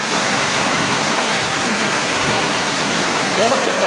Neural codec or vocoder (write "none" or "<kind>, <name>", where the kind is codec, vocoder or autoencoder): codec, SNAC